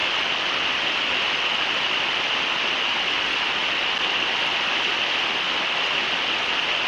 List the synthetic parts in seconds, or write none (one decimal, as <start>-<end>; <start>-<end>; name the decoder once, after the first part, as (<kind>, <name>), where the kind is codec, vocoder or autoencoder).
none